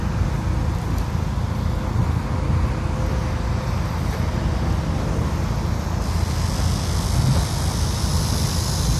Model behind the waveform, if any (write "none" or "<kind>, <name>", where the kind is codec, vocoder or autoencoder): none